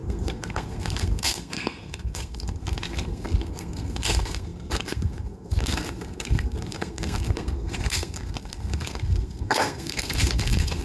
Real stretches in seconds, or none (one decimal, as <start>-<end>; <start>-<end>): none